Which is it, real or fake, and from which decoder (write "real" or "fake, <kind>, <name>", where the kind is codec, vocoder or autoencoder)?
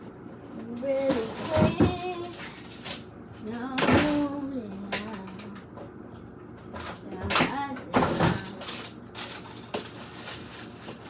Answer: real